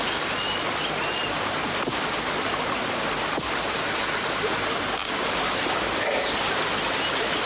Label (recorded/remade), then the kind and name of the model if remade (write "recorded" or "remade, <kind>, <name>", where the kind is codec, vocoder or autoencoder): recorded